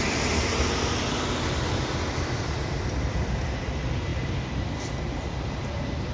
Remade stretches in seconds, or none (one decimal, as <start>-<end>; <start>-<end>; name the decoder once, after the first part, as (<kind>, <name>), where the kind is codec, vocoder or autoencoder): none